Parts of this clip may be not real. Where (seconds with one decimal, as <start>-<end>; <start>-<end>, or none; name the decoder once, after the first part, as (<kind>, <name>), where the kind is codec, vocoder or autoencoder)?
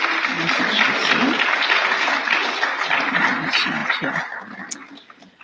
none